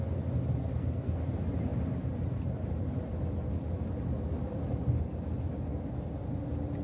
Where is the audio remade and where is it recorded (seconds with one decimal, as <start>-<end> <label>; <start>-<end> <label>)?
0.0-0.6 recorded; 0.6-1.2 remade; 1.2-6.8 recorded